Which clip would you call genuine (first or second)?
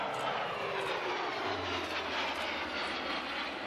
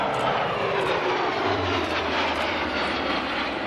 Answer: first